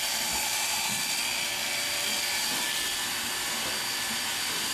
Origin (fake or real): real